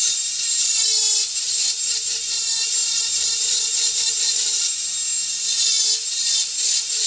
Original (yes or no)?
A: yes